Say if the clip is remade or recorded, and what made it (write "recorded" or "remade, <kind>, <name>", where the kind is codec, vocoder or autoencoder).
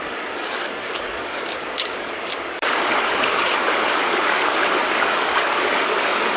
remade, codec, DAC